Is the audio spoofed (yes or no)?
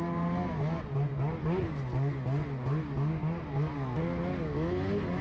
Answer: no